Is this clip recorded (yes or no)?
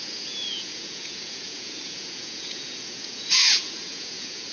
no